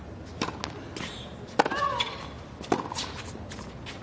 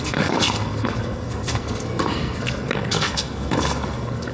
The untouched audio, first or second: first